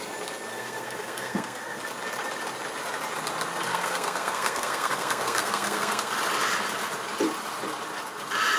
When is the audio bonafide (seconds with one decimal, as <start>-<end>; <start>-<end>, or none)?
0.0-0.5; 1.8-3.7; 6.1-8.6